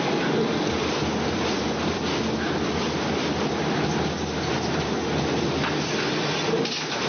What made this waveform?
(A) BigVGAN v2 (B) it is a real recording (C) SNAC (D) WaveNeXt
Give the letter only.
B